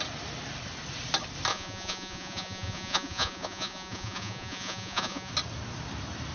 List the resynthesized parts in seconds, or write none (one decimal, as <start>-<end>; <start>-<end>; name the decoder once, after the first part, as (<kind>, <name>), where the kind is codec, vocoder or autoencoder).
1.5-5.3 (vocoder, Vocos)